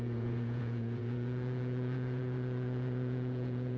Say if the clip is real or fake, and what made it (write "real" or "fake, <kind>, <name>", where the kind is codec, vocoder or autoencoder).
fake, vocoder, Vocos